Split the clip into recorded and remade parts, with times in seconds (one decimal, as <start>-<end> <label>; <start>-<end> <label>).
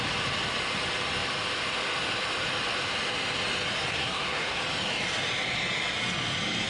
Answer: 0.0-3.9 recorded; 3.9-4.6 remade; 4.6-6.7 recorded